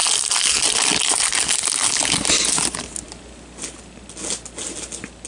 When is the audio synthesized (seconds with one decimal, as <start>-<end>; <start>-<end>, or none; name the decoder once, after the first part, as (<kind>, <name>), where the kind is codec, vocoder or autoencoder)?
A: none